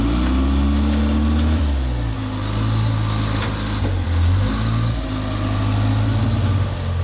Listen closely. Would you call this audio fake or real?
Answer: real